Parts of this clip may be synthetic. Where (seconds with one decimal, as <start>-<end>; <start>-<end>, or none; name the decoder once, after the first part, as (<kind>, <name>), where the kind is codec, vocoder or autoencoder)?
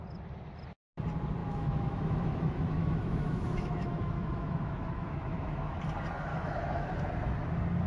1.4-5.8 (autoencoder, DAC-VAE); 6.3-6.9